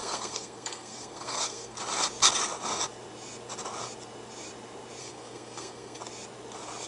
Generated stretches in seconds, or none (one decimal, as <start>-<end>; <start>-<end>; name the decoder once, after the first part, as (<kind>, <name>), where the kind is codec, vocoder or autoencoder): 0.0-1.8 (codec, SNAC); 5.0-6.0